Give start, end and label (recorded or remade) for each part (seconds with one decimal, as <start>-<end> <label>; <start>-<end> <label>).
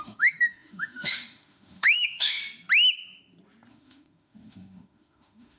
0.0-2.4 remade; 2.4-3.7 recorded; 3.7-5.6 remade